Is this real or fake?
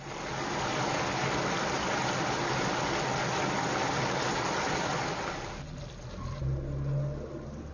real